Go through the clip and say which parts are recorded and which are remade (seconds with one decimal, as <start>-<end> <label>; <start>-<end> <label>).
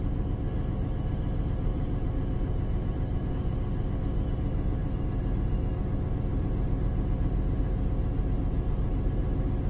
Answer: 0.0-9.7 recorded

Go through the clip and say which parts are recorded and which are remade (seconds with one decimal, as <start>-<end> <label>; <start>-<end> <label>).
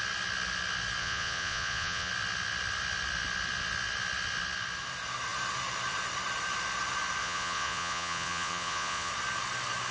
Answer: 0.0-1.0 recorded; 1.0-2.1 remade; 2.1-7.2 recorded; 7.2-9.1 remade; 9.1-9.9 recorded